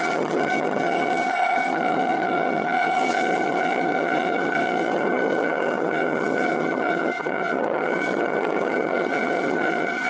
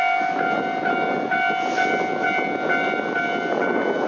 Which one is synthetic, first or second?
first